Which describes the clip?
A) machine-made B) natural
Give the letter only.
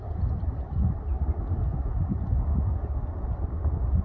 B